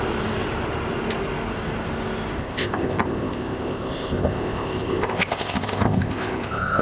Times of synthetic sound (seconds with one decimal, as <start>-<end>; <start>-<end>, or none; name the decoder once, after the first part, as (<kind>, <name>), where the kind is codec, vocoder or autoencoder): 2.4-6.8 (codec, ZipCodec)